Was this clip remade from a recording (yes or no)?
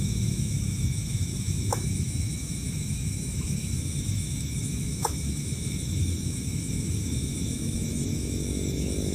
yes